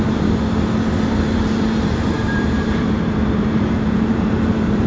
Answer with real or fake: fake